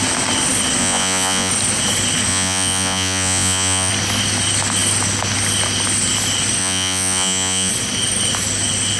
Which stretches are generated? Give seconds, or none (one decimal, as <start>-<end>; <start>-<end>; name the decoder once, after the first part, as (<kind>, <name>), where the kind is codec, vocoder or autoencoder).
0.8-1.5 (vocoder, Vocos); 2.3-3.9; 6.6-7.7